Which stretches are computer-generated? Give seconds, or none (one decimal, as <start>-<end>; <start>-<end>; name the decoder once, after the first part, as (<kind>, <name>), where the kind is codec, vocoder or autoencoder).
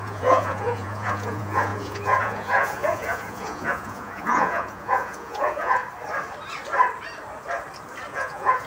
0.0-5.8 (vocoder, Vocos); 8.1-8.7